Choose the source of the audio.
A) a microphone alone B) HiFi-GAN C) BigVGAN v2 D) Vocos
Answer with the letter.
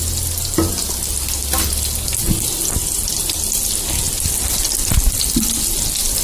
A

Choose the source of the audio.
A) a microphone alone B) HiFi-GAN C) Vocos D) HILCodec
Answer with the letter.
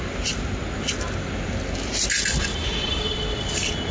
A